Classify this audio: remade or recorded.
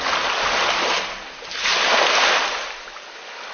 recorded